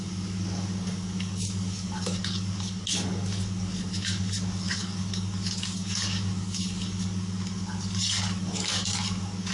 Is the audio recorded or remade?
remade